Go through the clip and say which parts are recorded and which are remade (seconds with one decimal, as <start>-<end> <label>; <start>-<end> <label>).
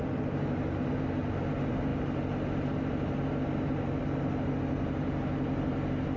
0.0-6.2 recorded